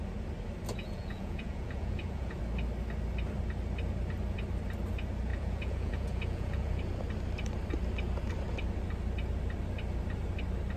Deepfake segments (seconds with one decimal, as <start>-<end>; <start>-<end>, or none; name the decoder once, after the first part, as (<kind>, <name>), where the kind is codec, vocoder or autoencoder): 0.7-2.4 (vocoder, Vocos); 5.3-6.8